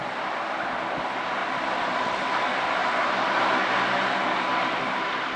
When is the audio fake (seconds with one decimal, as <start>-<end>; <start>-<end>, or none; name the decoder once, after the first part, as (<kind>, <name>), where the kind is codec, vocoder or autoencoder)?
none